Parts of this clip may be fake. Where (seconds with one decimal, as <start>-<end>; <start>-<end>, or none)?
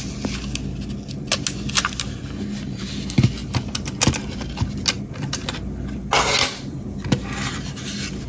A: none